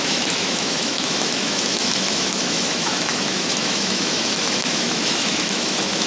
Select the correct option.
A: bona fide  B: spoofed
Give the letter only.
B